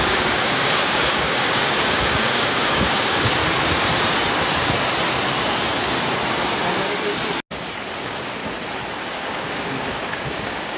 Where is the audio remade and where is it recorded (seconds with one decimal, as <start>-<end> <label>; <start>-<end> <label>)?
0.0-3.4 remade; 3.4-8.0 recorded; 8.0-8.4 remade; 8.4-9.0 recorded; 9.0-10.8 remade